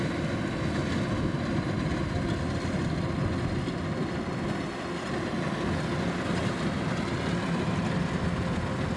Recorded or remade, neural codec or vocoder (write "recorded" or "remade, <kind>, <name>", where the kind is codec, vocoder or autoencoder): recorded